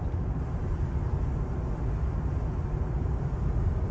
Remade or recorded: recorded